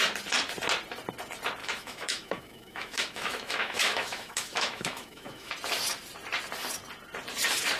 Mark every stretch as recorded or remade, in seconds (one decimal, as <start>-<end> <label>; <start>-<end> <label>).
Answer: 0.0-1.6 recorded; 1.6-5.5 remade; 5.5-7.8 recorded